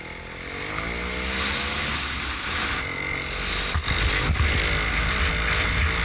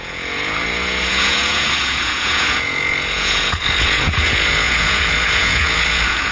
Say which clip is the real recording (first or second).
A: first